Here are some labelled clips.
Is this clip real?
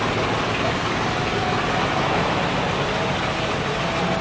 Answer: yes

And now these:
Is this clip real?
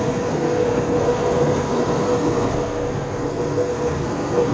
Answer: no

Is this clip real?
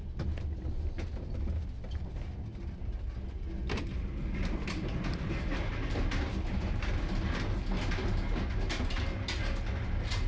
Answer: yes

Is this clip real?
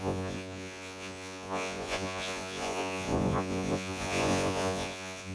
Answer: no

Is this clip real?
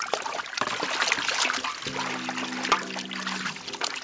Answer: yes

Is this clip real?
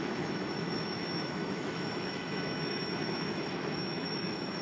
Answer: no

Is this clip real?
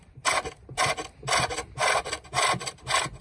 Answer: yes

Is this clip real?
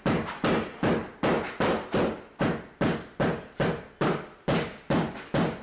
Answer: yes